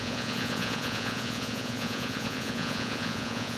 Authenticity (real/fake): fake